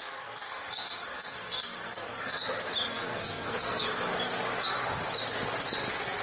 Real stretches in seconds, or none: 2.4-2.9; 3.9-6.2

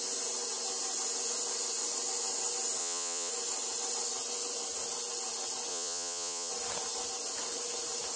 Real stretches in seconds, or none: 0.0-2.8; 3.3-5.7; 6.5-8.2

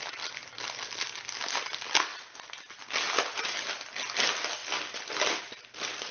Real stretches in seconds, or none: 0.0-6.1

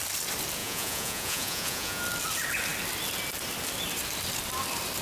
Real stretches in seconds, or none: 0.0-0.6; 2.0-5.0